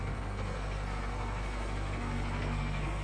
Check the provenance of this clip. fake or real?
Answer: fake